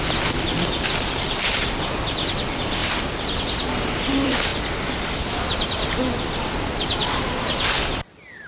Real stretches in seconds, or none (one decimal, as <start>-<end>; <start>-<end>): 2.8-4.1; 4.5-5.1